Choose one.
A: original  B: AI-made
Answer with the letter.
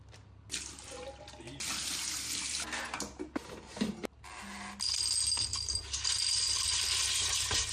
A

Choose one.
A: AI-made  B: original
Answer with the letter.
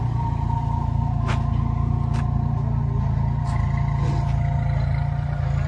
B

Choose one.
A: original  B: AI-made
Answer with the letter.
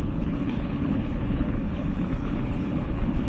B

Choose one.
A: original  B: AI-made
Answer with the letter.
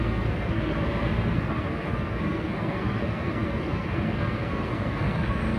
B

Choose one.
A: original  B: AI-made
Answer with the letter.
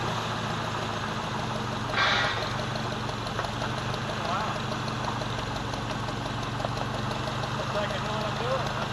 A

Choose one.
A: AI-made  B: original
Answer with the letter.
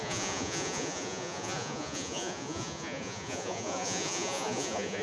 A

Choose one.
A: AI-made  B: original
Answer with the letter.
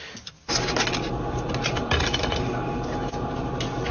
B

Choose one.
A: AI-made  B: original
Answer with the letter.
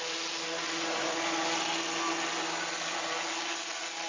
B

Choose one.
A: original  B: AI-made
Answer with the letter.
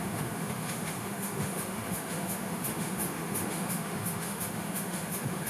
B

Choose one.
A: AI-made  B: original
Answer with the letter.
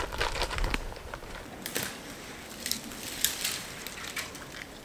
A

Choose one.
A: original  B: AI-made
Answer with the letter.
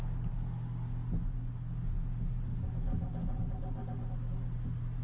A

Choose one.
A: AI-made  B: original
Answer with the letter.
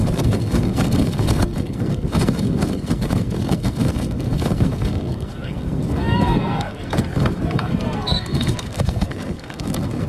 A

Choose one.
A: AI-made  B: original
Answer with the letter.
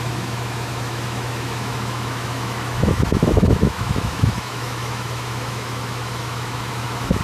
A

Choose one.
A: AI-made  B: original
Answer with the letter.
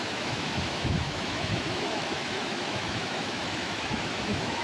A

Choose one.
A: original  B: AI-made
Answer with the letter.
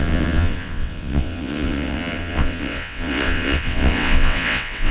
B